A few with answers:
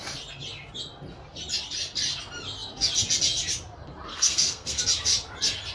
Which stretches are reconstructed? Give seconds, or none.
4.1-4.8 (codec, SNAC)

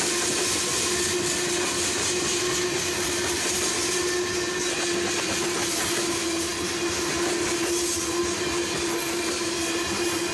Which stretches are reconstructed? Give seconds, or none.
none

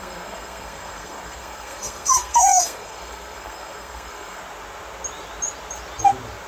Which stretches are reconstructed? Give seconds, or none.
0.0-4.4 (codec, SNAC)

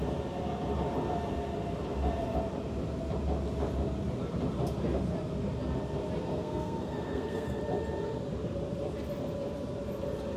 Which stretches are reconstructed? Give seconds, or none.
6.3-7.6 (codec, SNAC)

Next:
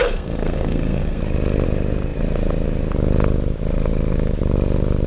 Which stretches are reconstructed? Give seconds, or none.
0.0-1.2 (codec, SNAC)

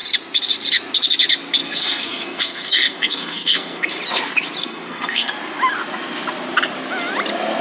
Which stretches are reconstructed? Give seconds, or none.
1.6-3.9 (codec, SNAC); 4.6-5.3

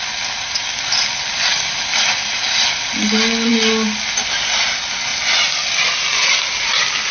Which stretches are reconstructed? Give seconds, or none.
none